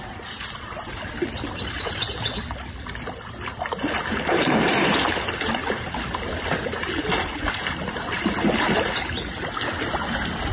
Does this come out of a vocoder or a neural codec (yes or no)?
no